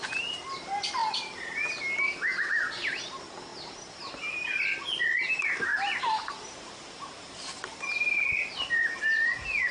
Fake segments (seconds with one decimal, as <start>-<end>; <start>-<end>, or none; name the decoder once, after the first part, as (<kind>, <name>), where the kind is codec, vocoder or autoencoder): none